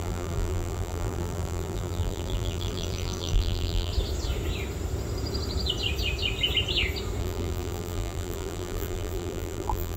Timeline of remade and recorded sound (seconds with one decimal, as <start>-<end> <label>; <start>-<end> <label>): 0.0-3.9 remade; 3.9-7.2 recorded; 7.2-10.0 remade